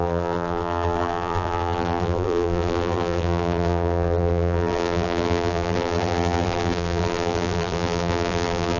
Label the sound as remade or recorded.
remade